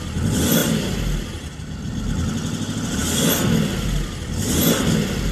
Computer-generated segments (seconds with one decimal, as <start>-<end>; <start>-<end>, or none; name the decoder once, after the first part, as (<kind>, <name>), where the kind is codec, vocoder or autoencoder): none